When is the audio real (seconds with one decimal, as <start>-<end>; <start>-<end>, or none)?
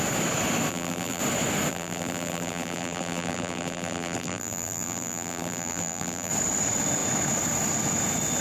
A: 0.0-0.7; 1.2-1.7; 6.3-8.4